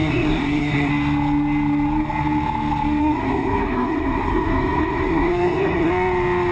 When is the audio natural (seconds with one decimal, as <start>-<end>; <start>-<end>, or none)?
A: 0.9-3.0; 5.9-6.5